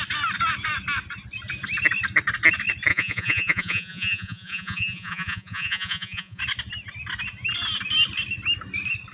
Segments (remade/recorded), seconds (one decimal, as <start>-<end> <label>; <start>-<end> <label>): 0.0-2.9 recorded; 2.9-6.4 remade; 6.4-9.1 recorded